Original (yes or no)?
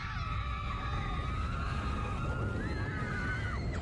yes